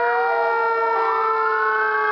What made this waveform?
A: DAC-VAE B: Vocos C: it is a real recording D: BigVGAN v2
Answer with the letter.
C